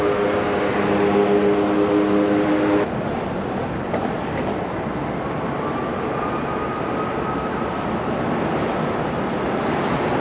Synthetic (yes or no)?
no